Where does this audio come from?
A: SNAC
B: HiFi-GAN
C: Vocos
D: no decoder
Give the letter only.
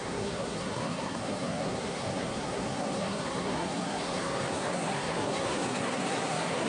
A